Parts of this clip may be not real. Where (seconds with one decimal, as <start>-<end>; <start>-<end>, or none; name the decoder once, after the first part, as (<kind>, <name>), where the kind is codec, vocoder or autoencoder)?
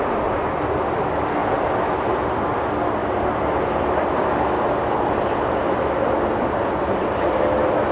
none